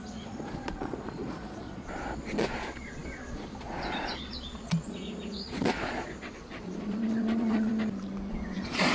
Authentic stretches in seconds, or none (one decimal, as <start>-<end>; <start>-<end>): 7.7-8.3